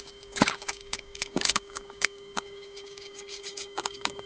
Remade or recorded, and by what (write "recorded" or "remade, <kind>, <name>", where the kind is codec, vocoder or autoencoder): remade, codec, DAC